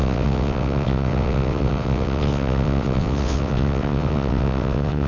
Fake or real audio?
fake